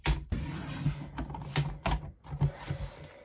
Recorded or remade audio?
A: recorded